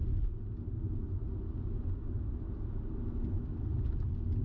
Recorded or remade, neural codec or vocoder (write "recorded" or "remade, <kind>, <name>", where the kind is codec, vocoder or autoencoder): recorded